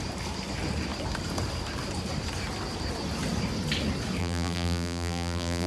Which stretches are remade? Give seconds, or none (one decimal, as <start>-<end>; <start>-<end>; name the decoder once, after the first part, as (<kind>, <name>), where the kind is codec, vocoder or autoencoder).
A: 4.2-5.7 (vocoder, BigVGAN v2)